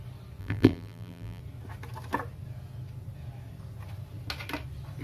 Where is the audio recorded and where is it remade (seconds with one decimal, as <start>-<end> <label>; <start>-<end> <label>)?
0.0-0.4 recorded; 0.4-1.4 remade; 1.4-5.0 recorded